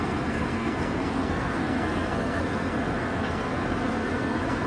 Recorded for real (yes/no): no